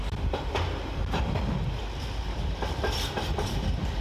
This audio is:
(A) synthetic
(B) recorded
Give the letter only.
A